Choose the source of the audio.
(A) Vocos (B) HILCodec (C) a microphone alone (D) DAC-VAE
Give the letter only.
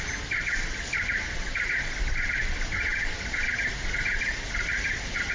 C